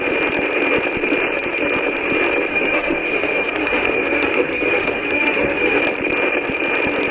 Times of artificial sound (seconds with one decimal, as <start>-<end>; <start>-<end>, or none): 2.5-5.8